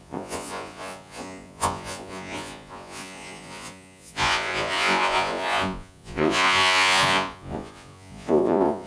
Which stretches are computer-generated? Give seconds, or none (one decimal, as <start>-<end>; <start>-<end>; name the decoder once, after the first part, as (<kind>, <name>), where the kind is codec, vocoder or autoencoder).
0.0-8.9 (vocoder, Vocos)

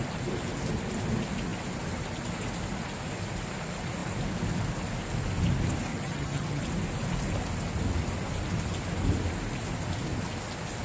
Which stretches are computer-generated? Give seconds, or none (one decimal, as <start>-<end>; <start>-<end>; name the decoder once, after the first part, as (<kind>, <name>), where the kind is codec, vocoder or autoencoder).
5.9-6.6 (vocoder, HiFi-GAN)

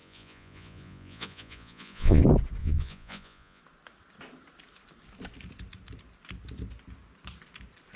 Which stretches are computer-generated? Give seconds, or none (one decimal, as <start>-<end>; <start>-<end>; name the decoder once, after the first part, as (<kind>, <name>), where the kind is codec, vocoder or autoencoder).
0.0-2.2 (vocoder, Vocos); 2.6-3.6